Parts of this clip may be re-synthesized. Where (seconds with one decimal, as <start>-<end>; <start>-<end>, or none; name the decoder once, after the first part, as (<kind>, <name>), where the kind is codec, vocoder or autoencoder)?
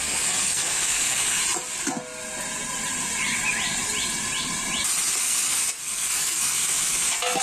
0.0-1.4 (codec, SNAC); 5.2-7.4